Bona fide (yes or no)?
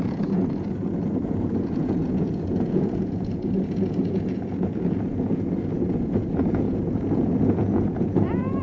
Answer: no